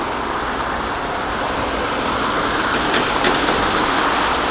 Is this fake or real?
real